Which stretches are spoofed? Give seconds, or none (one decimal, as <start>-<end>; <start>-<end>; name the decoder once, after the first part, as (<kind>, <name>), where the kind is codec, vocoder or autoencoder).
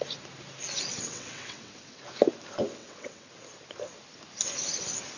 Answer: 0.9-2.0 (vocoder, WaveNeXt); 2.8-3.3